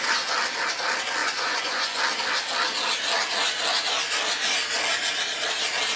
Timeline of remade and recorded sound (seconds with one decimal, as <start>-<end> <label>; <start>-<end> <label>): 0.0-1.2 recorded; 1.2-2.0 remade; 2.0-6.0 recorded